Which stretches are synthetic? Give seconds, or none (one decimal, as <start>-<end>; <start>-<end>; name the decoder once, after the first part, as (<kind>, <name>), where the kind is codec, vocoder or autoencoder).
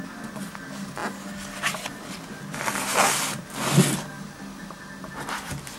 none